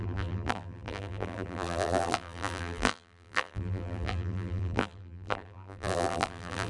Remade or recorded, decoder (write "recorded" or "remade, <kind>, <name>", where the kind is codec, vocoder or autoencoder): remade, vocoder, BigVGAN v2